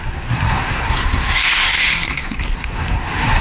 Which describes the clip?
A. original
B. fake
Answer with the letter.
B